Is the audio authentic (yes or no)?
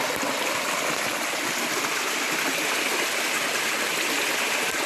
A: yes